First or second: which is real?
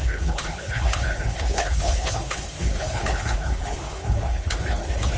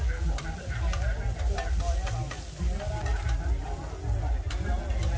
second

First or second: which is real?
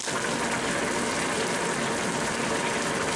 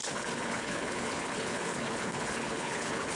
first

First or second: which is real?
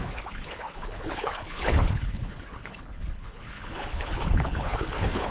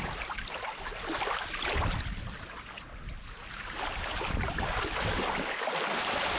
second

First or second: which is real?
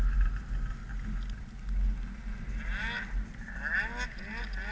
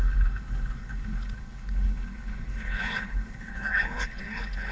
first